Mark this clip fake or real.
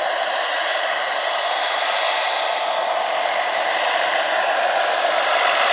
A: real